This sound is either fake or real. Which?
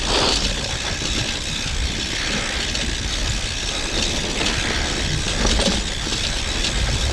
real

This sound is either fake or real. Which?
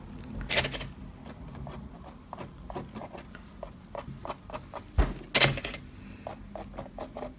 real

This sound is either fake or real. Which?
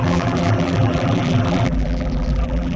fake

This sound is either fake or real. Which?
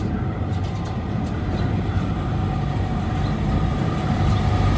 fake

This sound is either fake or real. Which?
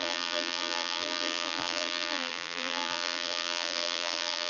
fake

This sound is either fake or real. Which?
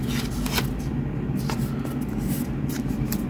real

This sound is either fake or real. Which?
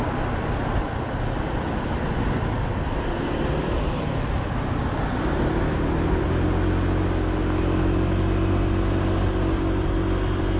real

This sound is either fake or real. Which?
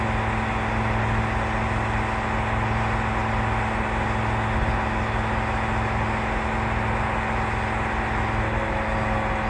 real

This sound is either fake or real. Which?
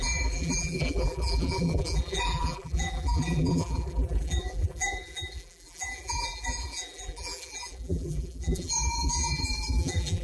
fake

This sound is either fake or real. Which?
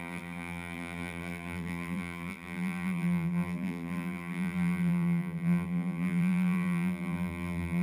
fake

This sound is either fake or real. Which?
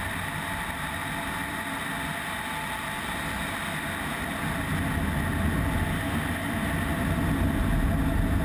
real